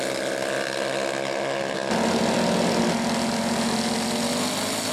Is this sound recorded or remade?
recorded